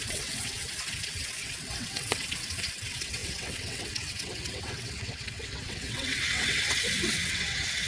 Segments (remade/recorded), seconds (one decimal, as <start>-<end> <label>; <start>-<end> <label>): 0.0-7.9 remade